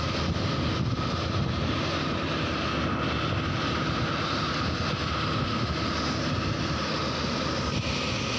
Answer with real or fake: real